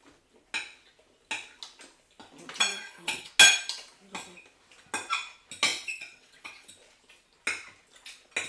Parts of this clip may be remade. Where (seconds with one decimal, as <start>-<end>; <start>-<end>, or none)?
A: 2.7-3.3; 5.7-6.7